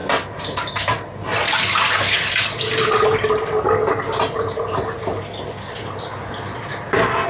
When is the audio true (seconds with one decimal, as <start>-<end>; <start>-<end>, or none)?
0.0-7.3